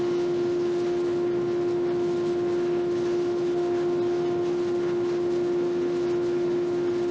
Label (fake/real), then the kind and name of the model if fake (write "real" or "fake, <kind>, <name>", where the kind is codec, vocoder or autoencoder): real